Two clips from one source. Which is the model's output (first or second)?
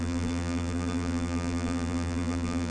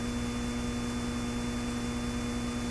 first